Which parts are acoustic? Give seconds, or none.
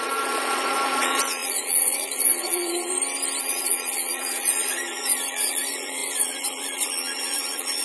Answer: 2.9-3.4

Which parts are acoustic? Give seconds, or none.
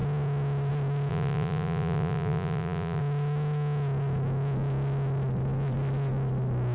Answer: 0.0-1.1; 3.0-6.7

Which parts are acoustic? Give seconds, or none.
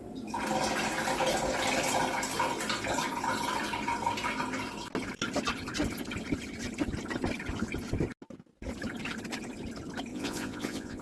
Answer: 0.0-10.1